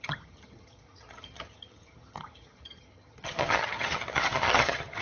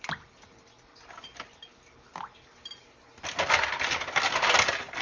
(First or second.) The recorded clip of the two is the second